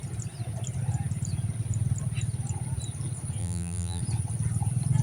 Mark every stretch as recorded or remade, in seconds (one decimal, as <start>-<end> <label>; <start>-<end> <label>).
0.0-3.4 recorded; 3.4-4.0 remade; 4.0-5.0 recorded